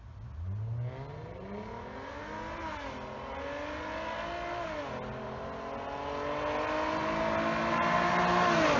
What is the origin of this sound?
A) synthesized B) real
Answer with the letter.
B